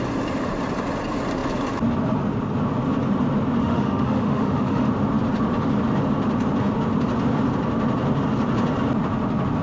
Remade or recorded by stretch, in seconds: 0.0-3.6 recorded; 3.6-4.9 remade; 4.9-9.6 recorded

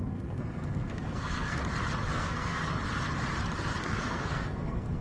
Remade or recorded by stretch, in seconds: 0.0-1.6 remade; 1.6-2.1 recorded; 2.1-2.6 remade; 2.6-3.8 recorded; 3.8-5.0 remade